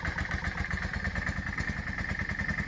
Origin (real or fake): real